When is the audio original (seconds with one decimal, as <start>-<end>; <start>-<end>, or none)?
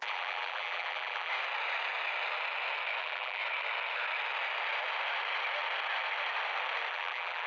1.3-3.0; 3.4-6.9